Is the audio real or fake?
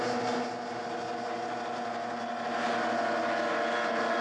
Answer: real